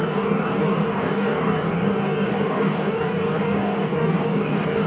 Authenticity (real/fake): fake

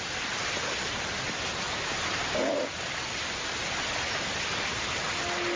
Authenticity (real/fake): real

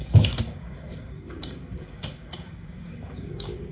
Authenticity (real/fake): fake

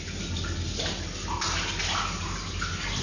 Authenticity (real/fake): real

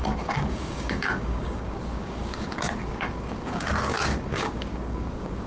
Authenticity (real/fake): fake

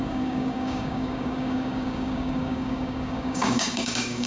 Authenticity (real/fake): fake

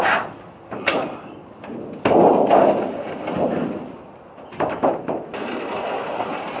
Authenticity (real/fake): real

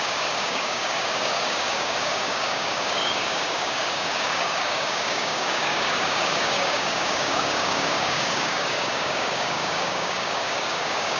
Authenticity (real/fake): fake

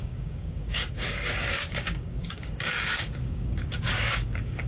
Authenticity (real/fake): fake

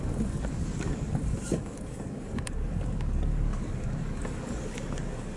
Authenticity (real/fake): fake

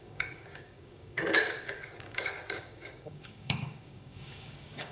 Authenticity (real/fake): fake